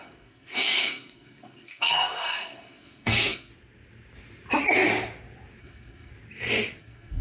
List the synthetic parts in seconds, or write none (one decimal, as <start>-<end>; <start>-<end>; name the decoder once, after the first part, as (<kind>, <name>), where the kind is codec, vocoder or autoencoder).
0.0-3.5 (codec, SNAC); 5.6-6.1; 6.8-7.2